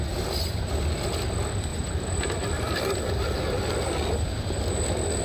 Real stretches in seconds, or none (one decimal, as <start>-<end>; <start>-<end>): 0.0-5.2